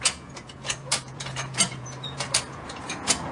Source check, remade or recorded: remade